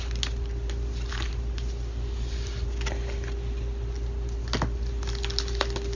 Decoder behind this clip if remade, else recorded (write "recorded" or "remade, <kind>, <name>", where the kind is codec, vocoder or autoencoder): recorded